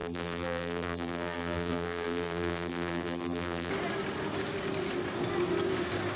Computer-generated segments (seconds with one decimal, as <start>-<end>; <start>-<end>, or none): 0.0-3.7